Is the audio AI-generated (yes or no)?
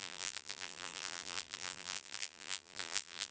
yes